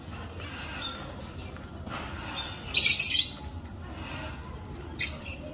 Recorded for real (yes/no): yes